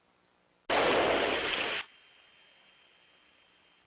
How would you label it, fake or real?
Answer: real